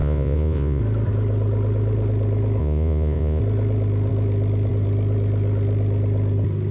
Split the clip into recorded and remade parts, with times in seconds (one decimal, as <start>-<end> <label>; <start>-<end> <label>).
0.0-0.8 remade; 0.8-2.6 recorded; 2.6-3.4 remade; 3.4-6.7 recorded